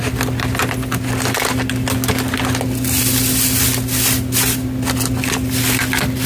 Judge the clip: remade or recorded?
recorded